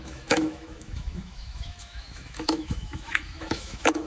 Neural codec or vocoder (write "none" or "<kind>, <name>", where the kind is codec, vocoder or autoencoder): autoencoder, DAC-VAE